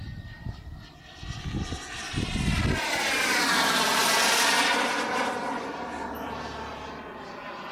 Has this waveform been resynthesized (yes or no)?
no